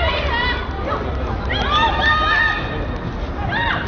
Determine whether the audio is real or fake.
real